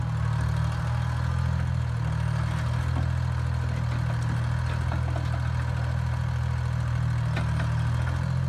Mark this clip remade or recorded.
recorded